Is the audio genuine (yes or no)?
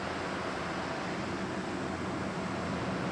yes